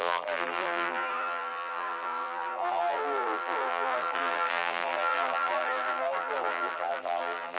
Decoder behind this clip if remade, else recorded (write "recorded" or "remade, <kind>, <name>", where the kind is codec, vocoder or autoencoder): remade, vocoder, BigVGAN v2